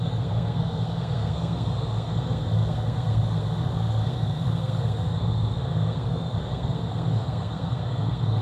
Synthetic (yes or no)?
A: yes